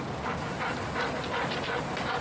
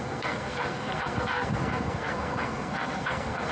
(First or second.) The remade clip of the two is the second